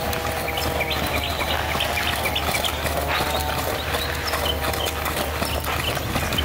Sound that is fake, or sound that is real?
real